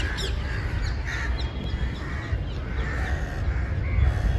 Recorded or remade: recorded